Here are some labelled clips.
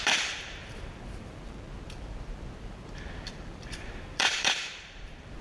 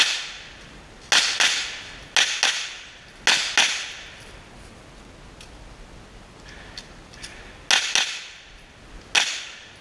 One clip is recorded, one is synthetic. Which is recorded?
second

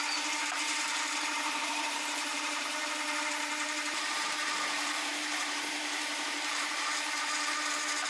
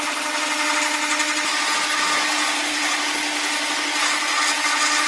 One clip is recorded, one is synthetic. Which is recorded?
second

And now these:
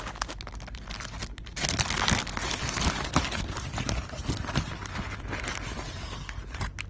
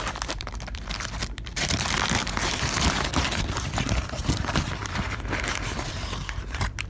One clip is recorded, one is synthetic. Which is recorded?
first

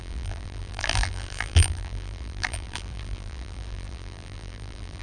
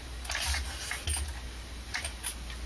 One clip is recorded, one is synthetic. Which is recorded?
second